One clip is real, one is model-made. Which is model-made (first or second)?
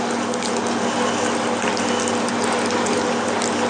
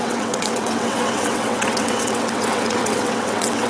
second